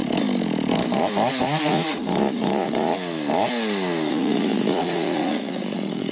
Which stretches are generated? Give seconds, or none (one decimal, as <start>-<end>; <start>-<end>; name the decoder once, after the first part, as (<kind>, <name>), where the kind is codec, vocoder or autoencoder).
1.4-2.9 (vocoder, Vocos); 4.1-6.1